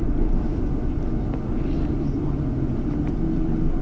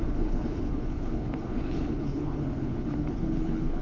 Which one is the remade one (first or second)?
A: second